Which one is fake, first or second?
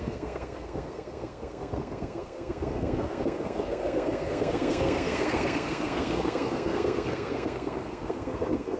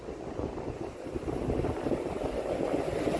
first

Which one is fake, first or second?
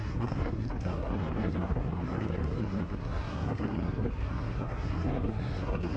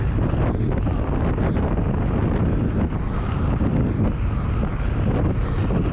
first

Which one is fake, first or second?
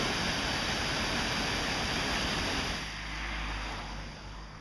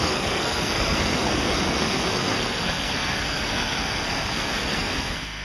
second